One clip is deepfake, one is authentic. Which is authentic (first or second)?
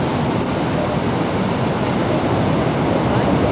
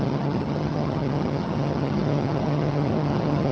first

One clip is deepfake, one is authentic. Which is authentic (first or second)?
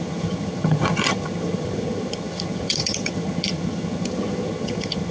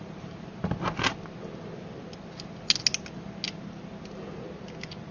second